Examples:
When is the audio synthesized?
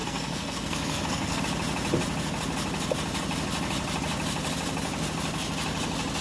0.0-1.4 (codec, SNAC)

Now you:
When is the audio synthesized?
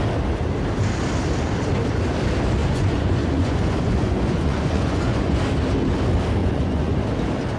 2.6-5.4 (vocoder, Vocos); 6.4-6.9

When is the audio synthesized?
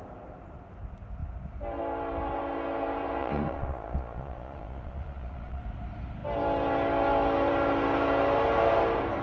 3.2-5.6 (vocoder, Vocos)